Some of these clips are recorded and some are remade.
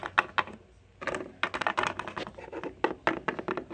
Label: recorded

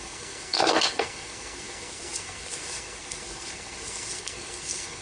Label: remade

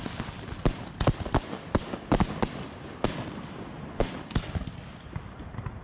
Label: recorded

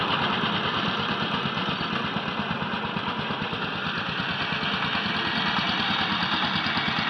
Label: recorded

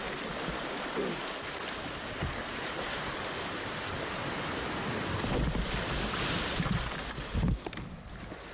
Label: recorded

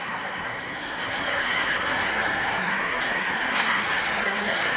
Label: remade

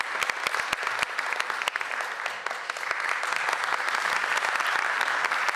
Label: recorded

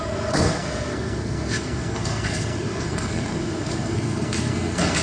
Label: remade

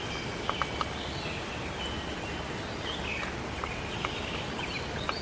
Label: recorded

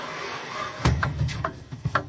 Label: remade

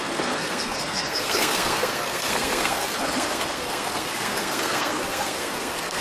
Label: remade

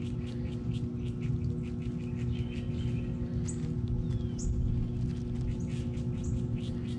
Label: recorded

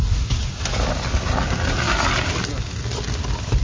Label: recorded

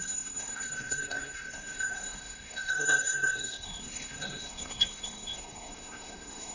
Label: remade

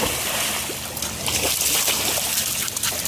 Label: recorded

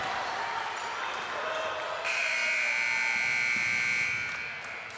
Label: recorded